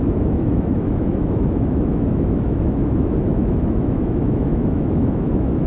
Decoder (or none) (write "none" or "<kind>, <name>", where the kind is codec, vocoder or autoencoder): autoencoder, DAC-VAE